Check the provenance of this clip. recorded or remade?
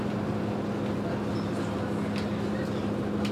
recorded